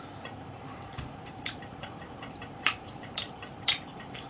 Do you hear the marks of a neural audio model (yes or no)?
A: yes